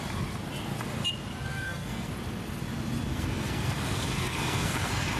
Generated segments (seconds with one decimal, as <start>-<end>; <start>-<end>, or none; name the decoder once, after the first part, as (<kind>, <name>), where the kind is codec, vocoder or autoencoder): 1.5-2.1 (codec, SNAC); 3.1-5.2

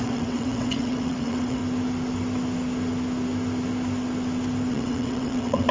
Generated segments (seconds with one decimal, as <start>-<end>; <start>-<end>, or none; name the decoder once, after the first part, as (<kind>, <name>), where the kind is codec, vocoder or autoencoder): 0.0-1.6 (vocoder, WaveNeXt); 4.7-5.7

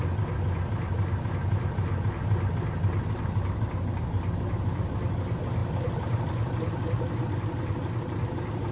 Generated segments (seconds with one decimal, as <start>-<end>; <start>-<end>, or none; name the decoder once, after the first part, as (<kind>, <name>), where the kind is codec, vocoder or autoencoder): none

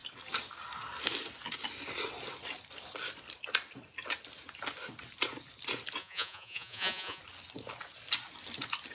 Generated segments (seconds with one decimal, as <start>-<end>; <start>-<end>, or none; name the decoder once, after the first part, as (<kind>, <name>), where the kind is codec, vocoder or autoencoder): 6.0-7.2 (vocoder, Vocos)

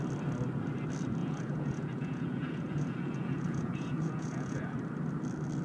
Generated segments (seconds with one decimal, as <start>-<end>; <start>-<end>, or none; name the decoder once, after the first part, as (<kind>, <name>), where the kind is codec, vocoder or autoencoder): 1.2-4.6 (vocoder, Vocos)

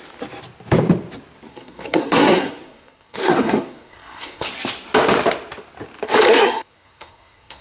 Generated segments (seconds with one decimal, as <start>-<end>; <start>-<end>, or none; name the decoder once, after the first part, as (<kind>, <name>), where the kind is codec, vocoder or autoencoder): 1.5-4.5 (codec, SNAC); 6.3-7.6